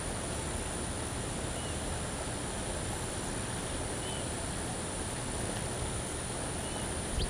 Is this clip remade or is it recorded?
recorded